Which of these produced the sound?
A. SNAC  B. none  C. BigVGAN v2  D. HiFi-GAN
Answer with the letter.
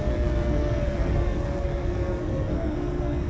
A